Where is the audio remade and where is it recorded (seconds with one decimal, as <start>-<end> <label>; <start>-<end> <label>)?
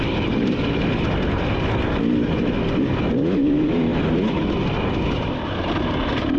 0.0-6.4 recorded